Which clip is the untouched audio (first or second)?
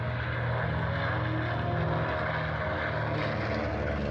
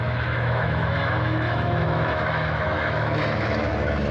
first